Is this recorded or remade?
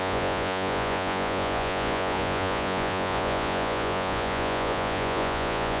remade